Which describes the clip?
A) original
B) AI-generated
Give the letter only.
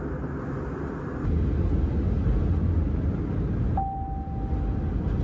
A